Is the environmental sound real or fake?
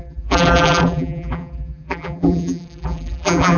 fake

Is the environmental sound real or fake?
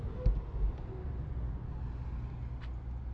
real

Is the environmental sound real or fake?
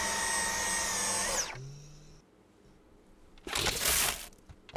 real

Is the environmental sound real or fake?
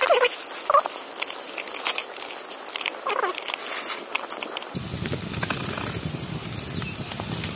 real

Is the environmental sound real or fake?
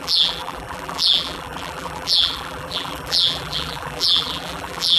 fake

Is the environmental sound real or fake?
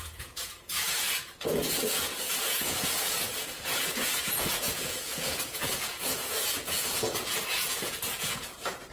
fake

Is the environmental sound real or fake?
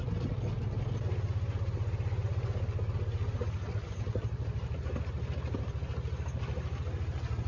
real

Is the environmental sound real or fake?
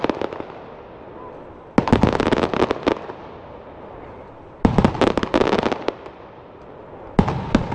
real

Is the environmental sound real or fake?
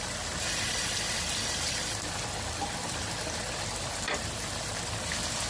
fake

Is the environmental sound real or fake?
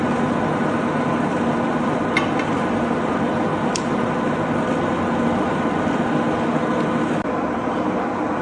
real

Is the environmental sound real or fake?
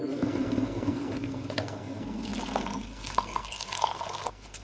fake